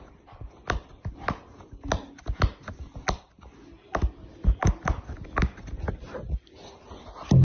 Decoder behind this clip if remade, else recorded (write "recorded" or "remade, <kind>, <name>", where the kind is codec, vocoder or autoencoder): recorded